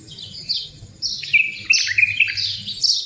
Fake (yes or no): no